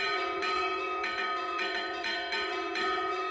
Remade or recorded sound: remade